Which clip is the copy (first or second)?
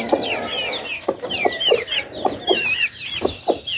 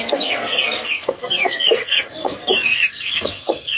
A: second